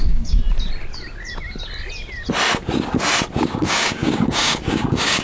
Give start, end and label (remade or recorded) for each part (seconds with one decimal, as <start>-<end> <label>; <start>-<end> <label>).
0.0-0.4 remade; 0.4-3.5 recorded; 3.5-5.2 remade